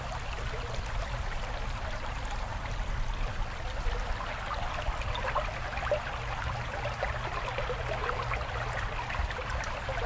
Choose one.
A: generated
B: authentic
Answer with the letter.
B